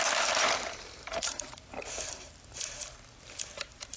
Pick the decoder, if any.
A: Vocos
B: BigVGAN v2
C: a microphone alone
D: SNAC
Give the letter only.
B